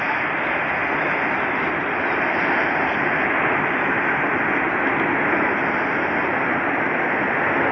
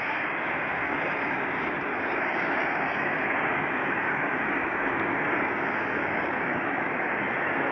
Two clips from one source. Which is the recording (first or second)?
first